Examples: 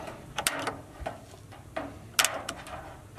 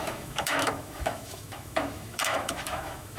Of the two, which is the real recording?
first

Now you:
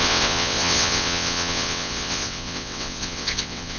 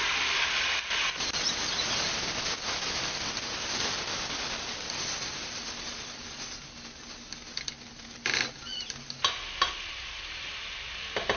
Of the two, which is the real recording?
second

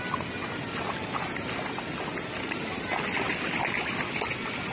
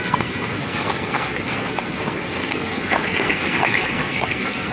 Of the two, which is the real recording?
first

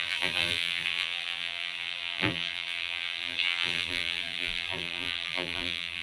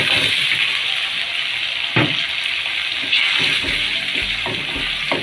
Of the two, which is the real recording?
second